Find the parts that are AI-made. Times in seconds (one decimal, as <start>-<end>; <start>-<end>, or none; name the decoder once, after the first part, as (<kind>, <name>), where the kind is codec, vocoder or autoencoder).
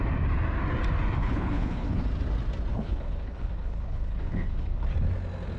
1.2-2.0 (codec, HILCodec); 2.7-4.8